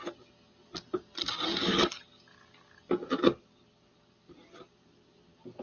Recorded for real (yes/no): yes